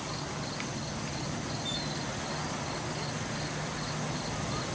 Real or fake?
real